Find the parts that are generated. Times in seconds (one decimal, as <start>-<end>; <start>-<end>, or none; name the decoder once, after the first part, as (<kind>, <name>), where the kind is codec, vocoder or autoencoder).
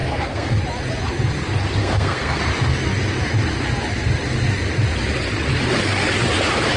0.0-0.6 (codec, SNAC); 1.8-2.4